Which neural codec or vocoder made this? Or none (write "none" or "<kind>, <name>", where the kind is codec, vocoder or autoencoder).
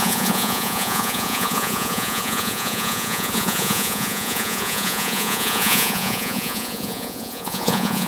vocoder, Vocos